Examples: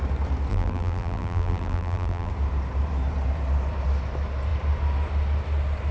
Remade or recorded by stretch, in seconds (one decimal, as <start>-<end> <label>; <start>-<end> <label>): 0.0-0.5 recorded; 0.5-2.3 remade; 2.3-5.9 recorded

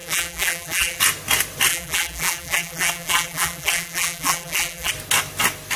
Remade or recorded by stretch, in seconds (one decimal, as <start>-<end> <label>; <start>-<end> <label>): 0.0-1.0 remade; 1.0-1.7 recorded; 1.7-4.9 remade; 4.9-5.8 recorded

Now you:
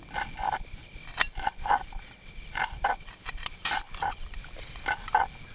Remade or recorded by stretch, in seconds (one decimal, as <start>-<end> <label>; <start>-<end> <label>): 0.0-0.4 recorded; 0.4-3.7 remade; 3.7-5.5 recorded